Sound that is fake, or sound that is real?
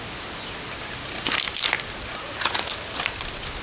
real